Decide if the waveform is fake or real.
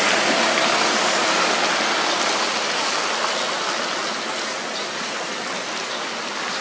real